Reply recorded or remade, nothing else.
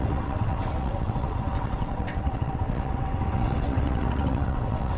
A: remade